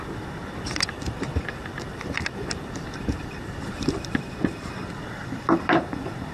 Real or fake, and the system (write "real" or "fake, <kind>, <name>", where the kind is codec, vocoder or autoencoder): fake, vocoder, BigVGAN v2